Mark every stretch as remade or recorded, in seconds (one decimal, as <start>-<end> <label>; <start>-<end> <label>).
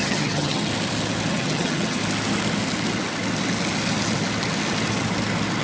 0.0-0.7 remade; 0.7-1.3 recorded; 1.3-2.0 remade; 2.0-5.6 recorded